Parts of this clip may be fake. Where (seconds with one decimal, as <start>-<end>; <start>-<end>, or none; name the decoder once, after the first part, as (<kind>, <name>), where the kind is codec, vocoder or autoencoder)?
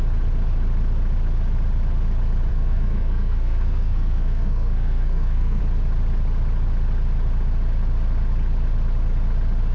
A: 2.5-5.6 (codec, SNAC)